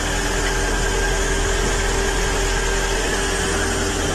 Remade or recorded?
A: recorded